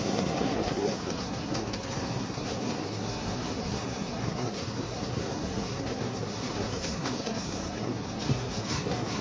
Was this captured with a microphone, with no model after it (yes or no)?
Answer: no